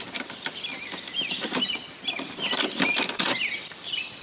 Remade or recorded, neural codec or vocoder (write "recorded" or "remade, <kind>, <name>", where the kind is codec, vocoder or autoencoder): remade, vocoder, BigVGAN v2